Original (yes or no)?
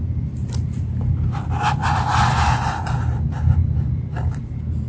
yes